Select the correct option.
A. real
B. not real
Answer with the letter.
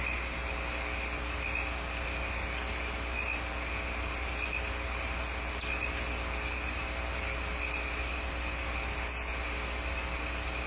A